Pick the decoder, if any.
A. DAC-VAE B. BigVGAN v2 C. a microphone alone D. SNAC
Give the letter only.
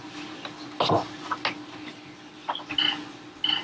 C